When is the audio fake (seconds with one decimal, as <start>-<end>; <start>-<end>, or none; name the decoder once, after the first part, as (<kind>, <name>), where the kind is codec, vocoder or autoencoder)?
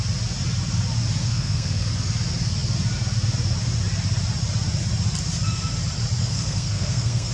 1.2-1.9 (codec, SNAC); 6.2-7.3